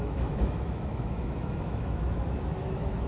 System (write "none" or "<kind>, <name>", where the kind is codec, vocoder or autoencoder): autoencoder, DAC-VAE